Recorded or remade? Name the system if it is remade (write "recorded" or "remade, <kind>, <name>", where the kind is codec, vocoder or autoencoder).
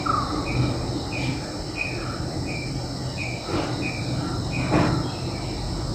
recorded